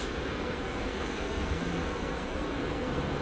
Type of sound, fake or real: fake